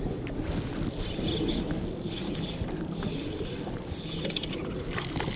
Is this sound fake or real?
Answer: real